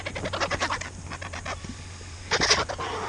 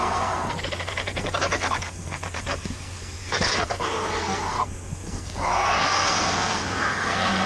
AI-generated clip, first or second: second